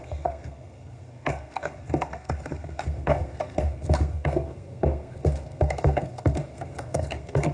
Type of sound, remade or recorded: remade